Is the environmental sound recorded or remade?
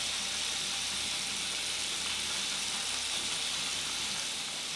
recorded